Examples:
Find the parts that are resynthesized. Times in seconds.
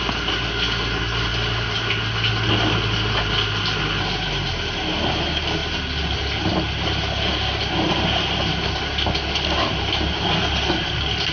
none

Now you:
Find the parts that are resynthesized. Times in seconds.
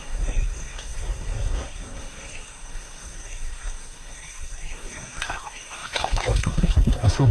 0.0-7.3 (codec, SNAC)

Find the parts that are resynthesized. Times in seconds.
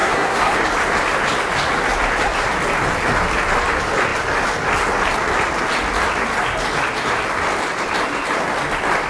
0.0-0.6 (codec, SNAC)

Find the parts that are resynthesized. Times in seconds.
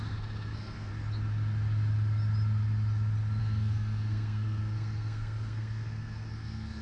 0.0-0.9 (codec, SNAC); 3.4-6.8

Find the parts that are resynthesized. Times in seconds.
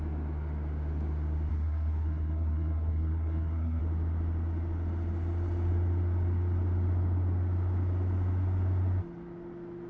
1.5-3.8 (codec, SNAC)